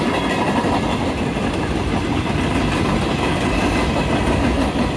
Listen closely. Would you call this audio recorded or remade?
recorded